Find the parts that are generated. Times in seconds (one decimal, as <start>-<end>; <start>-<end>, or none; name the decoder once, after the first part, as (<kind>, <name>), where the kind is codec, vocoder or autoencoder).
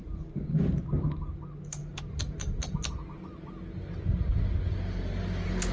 none